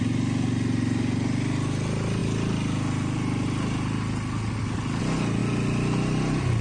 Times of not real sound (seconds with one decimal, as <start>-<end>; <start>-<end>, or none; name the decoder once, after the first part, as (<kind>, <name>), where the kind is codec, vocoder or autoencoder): none